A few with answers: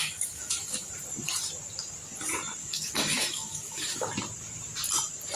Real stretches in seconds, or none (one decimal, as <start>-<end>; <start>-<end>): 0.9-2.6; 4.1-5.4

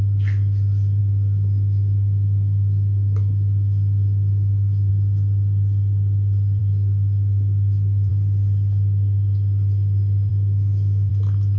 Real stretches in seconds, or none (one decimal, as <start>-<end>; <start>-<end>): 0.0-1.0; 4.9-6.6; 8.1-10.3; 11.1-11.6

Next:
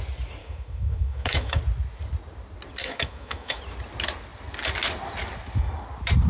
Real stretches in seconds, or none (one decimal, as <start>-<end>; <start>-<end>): 0.0-0.4; 1.6-2.8; 3.6-6.3

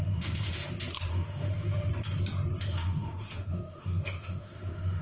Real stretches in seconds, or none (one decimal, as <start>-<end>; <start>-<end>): 0.6-1.1; 1.9-2.6

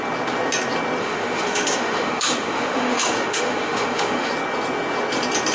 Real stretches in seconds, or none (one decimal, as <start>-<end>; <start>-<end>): 0.0-1.0; 4.3-5.5

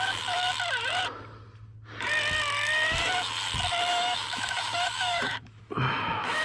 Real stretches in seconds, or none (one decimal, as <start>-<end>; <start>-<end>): 0.0-3.9